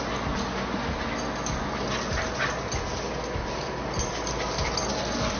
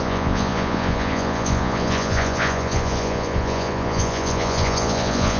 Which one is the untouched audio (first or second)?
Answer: first